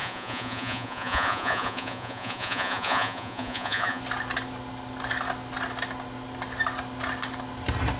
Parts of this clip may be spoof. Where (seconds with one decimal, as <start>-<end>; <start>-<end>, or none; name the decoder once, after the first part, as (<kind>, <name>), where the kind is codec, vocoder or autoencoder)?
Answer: 0.0-4.0 (vocoder, Vocos)